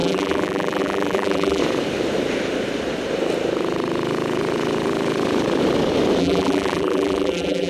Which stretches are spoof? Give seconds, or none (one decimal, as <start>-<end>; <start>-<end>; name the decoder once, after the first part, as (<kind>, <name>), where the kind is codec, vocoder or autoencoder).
0.0-1.6 (vocoder, BigVGAN v2); 6.2-7.7

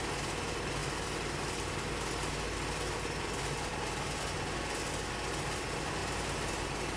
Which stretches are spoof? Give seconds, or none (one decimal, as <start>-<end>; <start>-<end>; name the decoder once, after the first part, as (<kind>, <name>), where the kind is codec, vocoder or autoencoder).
0.8-2.2 (vocoder, BigVGAN v2)

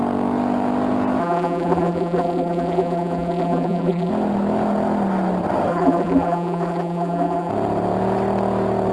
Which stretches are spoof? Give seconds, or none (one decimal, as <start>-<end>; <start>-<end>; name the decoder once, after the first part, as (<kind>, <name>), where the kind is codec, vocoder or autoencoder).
1.2-4.1 (vocoder, BigVGAN v2); 5.7-7.5

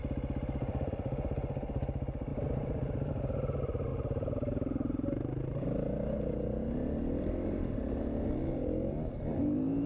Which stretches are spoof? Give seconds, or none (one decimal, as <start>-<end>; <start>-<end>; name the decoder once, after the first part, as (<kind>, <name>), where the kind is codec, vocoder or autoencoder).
2.3-3.1 (vocoder, BigVGAN v2); 3.9-5.6

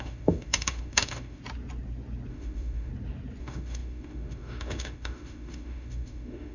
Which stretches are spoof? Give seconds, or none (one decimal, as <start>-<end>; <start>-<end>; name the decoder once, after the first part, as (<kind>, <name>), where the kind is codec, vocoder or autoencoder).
0.0-1.4 (autoencoder, DAC-VAE); 2.3-2.9; 3.4-6.5

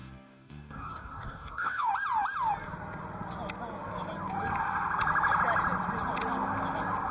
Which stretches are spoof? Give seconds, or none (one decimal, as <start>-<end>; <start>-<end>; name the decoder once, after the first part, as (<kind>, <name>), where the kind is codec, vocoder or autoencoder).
0.0-1.9 (codec, DAC)